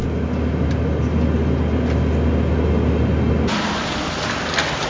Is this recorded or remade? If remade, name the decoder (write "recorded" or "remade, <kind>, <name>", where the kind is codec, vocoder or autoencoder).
recorded